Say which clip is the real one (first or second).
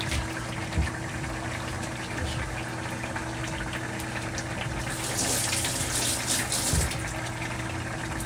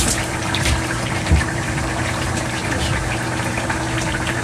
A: first